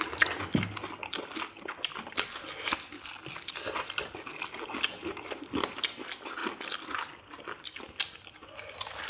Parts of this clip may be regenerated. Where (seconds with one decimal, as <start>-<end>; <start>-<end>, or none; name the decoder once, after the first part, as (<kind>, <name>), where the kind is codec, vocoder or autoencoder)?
none